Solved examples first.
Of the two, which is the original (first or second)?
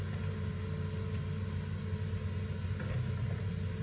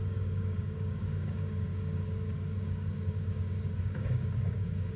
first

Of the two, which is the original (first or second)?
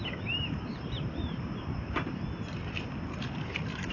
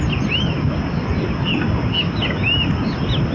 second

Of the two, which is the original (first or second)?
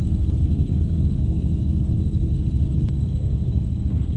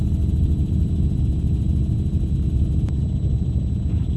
second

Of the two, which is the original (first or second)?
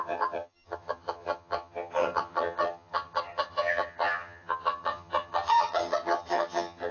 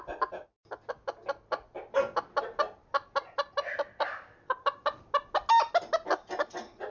second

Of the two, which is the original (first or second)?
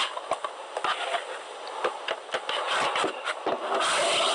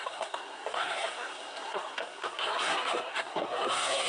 first